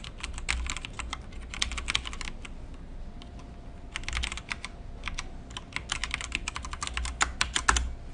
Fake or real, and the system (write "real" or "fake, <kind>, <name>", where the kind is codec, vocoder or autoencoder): real